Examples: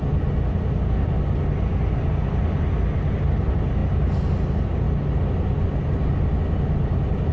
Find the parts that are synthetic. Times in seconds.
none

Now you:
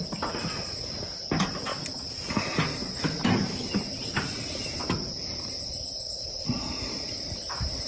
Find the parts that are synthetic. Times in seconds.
none

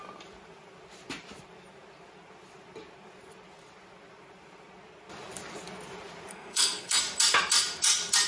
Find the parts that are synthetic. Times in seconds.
6.3-7.0 (codec, SNAC)

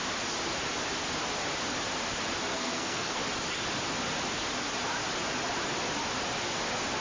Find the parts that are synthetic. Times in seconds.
2.5-3.2 (codec, SNAC)

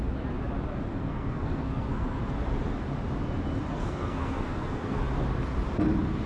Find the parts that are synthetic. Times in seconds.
0.9-2.2 (codec, SNAC); 3.7-5.0

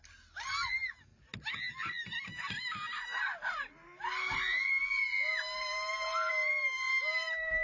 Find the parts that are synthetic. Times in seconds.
none